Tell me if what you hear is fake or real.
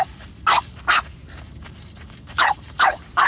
real